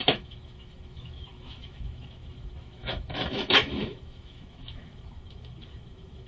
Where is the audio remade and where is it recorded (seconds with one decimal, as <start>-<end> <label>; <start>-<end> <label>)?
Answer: 0.0-6.3 remade